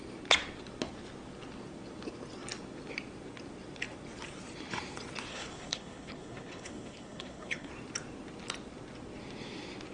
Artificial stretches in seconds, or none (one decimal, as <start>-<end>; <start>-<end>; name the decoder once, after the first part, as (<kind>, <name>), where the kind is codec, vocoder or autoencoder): 5.3-7.7 (codec, HILCodec)